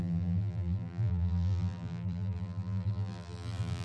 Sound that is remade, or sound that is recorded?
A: remade